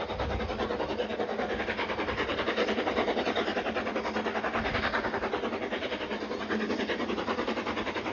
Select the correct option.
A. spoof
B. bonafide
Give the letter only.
B